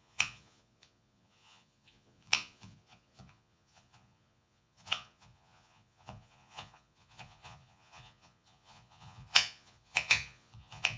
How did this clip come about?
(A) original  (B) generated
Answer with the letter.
B